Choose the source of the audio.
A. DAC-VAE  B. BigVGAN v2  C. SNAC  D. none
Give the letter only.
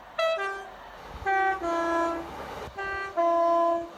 D